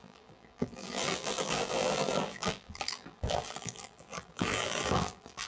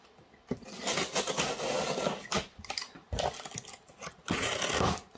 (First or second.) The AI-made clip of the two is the first